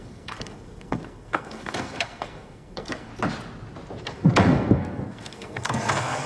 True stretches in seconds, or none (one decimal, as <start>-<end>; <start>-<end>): 3.1-4.0